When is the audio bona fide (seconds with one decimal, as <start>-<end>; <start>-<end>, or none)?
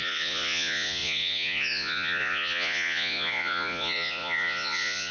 none